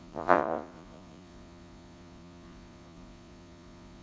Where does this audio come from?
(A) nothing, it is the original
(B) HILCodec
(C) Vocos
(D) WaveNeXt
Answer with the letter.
C